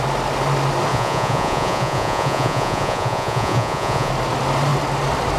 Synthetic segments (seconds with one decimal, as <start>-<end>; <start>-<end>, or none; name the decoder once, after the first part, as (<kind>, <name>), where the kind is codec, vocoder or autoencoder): 0.9-4.1 (vocoder, Vocos)